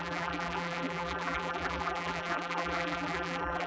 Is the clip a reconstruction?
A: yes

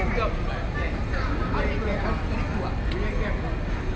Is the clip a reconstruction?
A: no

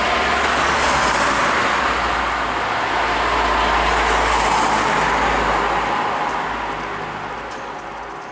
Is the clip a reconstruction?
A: no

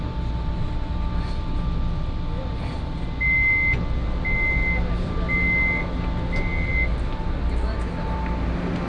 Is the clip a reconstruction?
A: no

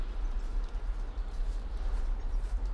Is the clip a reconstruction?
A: yes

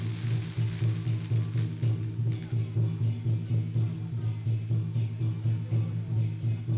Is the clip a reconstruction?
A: no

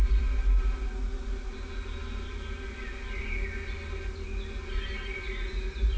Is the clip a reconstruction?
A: no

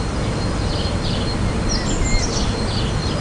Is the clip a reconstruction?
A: no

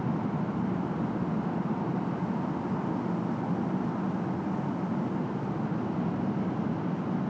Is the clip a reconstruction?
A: no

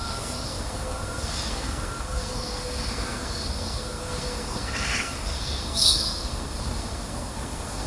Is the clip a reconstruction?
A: yes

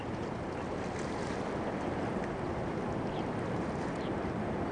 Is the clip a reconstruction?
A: no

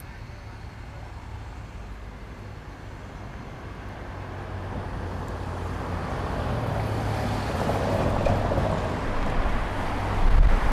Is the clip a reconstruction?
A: no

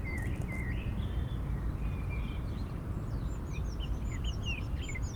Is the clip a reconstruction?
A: no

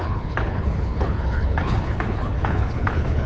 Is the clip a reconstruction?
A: yes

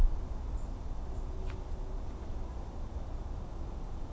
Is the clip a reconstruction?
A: no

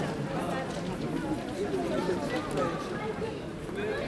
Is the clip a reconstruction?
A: no